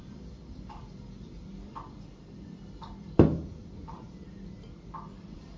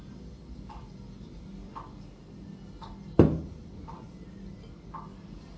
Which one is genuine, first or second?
second